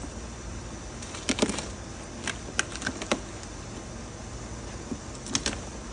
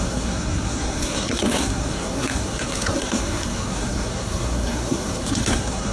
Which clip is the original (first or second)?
first